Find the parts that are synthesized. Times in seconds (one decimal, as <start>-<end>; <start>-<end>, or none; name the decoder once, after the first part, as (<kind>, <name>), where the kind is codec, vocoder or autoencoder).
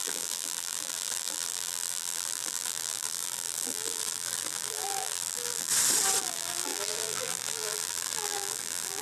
0.0-5.7 (vocoder, BigVGAN v2); 6.2-9.0